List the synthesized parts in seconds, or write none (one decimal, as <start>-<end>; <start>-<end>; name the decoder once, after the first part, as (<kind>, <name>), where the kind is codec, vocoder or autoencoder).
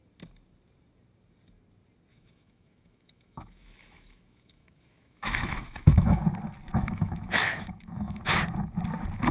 2.1-6.2 (autoencoder, DAC-VAE); 6.7-8.2